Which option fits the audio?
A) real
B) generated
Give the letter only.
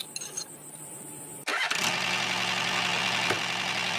B